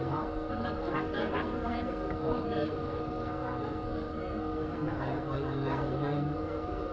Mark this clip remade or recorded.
remade